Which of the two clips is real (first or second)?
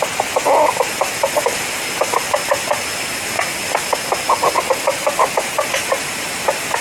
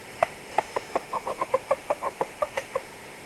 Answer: first